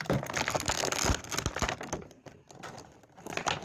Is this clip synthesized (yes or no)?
no